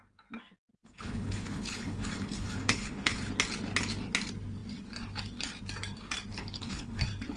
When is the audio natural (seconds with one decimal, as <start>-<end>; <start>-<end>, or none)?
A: 0.0-0.7; 3.3-6.3; 7.0-7.4